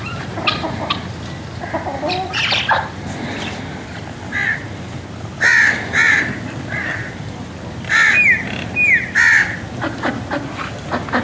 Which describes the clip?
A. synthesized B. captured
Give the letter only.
B